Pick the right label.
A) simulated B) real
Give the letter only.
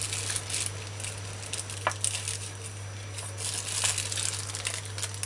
B